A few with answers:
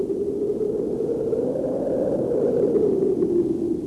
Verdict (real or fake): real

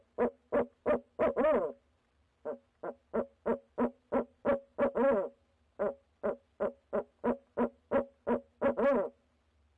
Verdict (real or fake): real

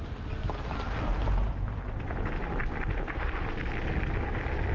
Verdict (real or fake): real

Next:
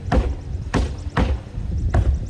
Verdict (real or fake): real